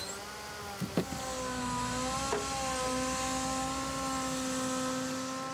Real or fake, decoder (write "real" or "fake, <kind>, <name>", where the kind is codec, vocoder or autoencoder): real